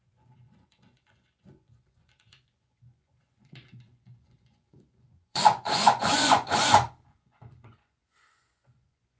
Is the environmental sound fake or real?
fake